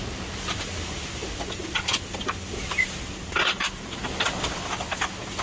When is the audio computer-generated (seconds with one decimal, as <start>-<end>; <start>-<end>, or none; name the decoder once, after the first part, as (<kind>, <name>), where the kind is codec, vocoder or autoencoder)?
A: none